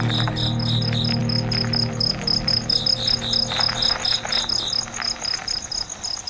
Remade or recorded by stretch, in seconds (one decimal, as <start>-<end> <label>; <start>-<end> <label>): 0.0-6.3 recorded